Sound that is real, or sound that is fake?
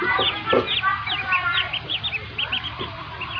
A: real